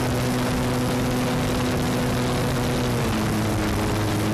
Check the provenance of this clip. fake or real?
real